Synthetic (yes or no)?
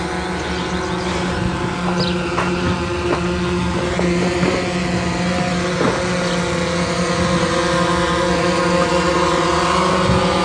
no